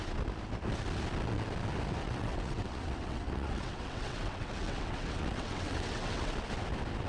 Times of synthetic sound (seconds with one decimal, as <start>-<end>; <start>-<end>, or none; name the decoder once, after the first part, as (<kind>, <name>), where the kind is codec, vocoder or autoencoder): 2.0-6.3 (vocoder, WaveNeXt)